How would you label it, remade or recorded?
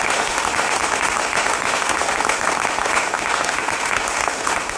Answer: remade